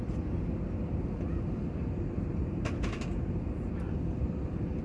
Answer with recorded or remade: recorded